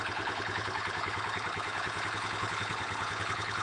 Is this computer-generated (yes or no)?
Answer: yes